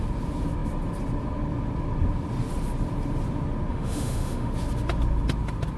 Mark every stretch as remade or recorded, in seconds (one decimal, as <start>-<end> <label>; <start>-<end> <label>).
0.0-3.7 recorded; 3.7-4.5 remade; 4.5-5.8 recorded